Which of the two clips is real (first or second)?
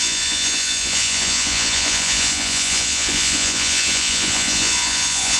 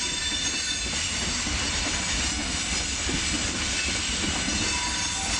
second